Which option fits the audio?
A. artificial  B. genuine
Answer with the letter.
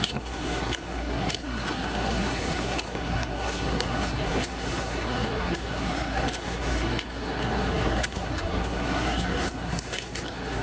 A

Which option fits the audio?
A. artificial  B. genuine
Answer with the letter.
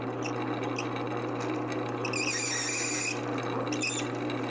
B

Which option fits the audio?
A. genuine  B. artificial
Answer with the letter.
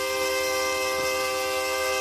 A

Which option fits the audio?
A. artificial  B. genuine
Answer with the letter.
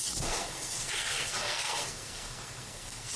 A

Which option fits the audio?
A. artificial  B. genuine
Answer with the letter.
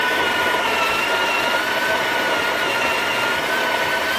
B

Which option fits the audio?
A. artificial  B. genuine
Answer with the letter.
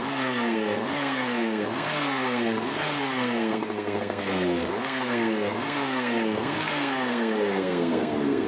A